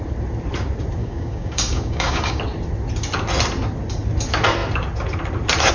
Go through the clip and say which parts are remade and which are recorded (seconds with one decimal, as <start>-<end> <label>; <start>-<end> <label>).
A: 0.0-1.0 recorded; 1.0-2.4 remade; 2.4-5.7 recorded